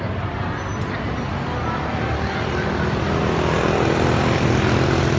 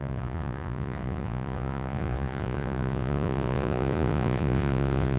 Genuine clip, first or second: first